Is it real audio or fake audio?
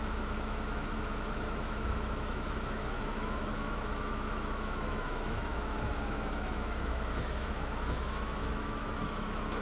fake